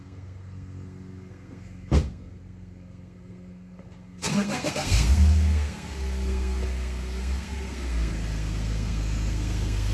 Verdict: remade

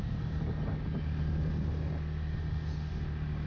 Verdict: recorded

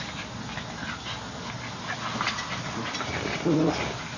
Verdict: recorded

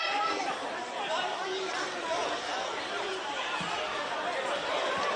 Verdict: remade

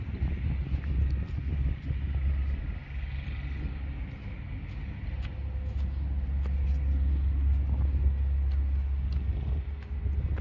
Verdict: recorded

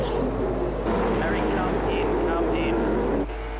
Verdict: recorded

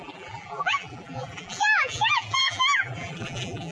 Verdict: remade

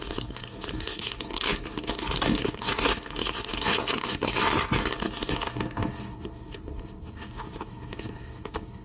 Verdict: remade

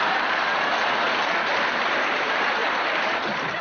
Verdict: remade